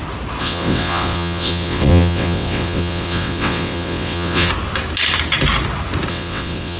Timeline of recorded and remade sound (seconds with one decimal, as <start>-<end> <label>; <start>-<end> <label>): 0.0-0.4 recorded; 0.4-4.5 remade; 4.5-6.1 recorded; 6.1-6.8 remade